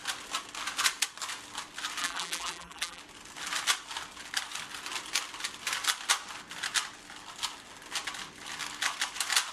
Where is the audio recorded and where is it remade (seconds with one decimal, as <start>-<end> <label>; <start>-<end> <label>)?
0.0-2.0 recorded; 2.0-3.0 remade; 3.0-9.5 recorded